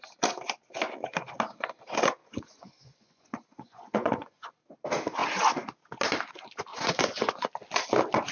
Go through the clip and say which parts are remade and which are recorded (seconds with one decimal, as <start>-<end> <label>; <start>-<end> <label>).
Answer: 0.0-2.2 recorded; 2.2-4.5 remade; 4.5-6.7 recorded; 6.7-7.5 remade; 7.5-8.3 recorded